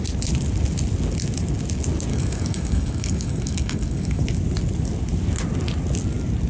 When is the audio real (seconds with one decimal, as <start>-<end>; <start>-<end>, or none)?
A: 0.0-2.1; 4.2-6.5